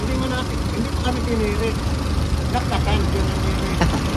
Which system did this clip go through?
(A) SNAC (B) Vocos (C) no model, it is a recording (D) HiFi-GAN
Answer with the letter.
C